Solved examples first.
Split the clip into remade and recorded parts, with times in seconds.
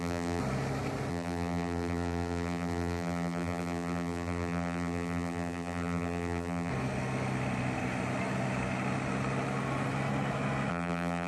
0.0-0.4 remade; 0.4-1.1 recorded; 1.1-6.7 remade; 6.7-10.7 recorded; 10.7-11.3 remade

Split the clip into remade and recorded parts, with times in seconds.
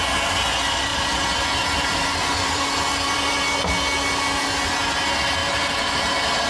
0.0-0.9 recorded; 0.9-3.4 remade; 3.4-5.4 recorded; 5.4-6.0 remade; 6.0-6.5 recorded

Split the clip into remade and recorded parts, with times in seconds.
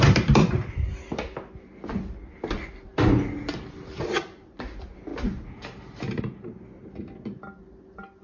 0.0-8.2 recorded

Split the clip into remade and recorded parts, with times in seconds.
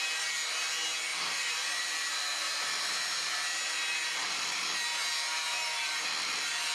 0.0-1.1 recorded; 1.1-4.6 remade; 4.6-6.7 recorded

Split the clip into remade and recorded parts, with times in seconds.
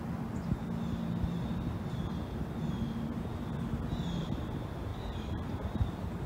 0.0-4.9 recorded; 4.9-6.3 remade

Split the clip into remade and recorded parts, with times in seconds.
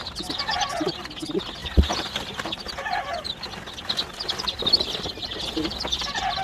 0.0-1.6 recorded; 1.6-2.9 remade; 2.9-6.4 recorded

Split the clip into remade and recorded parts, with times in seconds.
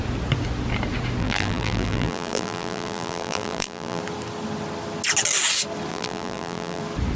0.0-1.2 recorded; 1.2-4.0 remade; 4.0-5.9 recorded; 5.9-6.8 remade; 6.8-7.2 recorded